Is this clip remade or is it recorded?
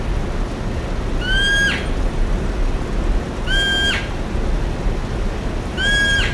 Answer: recorded